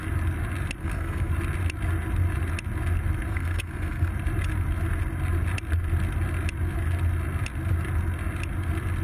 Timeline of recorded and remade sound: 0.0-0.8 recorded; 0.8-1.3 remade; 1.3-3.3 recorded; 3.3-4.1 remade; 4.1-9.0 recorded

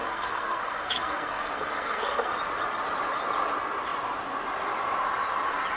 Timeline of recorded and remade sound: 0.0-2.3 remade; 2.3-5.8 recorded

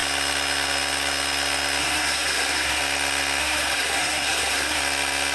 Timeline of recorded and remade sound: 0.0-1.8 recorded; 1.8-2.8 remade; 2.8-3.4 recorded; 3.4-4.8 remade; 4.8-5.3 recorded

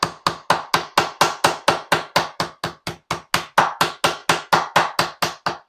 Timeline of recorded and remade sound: 0.0-5.7 recorded